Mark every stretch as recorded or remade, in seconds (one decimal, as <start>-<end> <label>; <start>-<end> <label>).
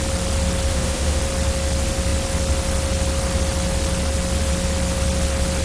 0.0-0.7 recorded; 0.7-1.2 remade; 1.2-5.6 recorded